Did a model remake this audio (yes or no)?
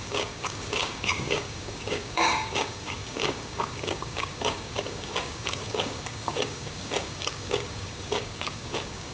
yes